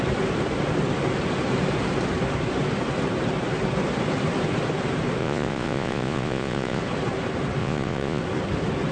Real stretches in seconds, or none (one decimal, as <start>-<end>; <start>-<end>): 0.0-5.2; 6.8-7.6; 8.2-8.9